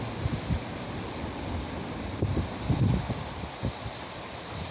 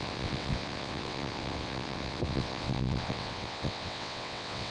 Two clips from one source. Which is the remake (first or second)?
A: second